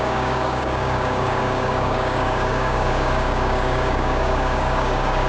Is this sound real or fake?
fake